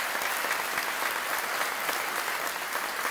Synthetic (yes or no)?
no